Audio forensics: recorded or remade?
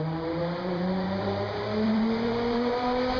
remade